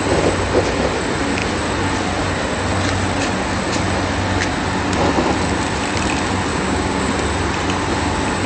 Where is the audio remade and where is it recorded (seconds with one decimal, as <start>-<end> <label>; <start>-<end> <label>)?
0.0-6.5 recorded; 6.5-7.1 remade; 7.1-8.5 recorded